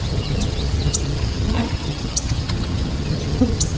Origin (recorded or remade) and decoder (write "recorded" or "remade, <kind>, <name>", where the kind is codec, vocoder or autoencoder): remade, vocoder, HiFi-GAN